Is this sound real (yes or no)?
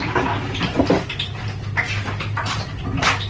yes